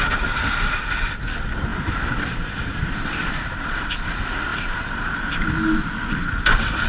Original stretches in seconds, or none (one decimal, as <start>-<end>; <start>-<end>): 0.0-1.7; 3.9-6.9